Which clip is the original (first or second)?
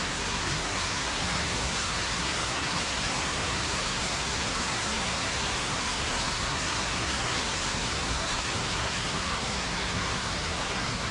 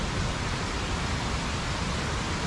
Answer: second